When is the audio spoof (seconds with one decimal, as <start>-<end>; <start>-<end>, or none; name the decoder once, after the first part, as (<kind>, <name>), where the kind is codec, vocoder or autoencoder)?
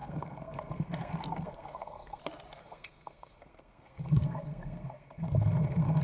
0.0-2.2 (codec, SNAC); 2.6-6.0